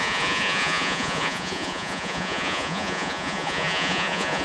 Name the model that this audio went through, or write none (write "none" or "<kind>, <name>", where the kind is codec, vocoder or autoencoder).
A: vocoder, Vocos